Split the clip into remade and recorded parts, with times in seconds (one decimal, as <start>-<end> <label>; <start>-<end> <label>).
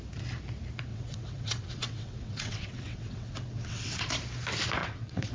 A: 0.0-0.9 recorded; 0.9-4.1 remade; 4.1-4.8 recorded; 4.8-5.3 remade